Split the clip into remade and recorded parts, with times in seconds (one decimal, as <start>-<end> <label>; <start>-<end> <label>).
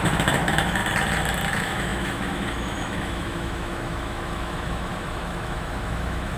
0.0-0.8 remade; 0.8-1.5 recorded; 1.5-6.4 remade